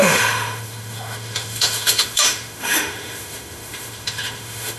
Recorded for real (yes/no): no